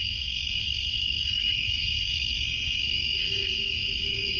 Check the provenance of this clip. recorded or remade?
remade